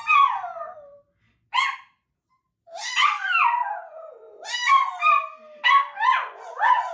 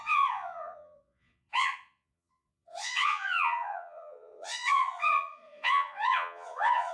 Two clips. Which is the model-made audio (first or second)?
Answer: second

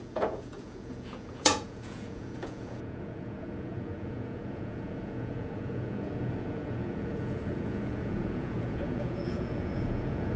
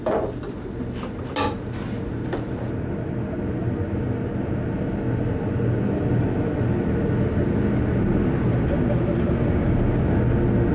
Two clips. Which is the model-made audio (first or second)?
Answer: first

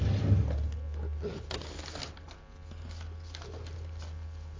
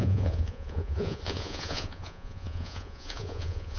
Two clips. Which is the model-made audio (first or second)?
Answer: second